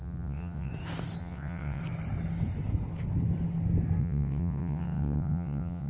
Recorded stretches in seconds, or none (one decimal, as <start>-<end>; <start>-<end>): 0.7-1.2; 1.8-4.0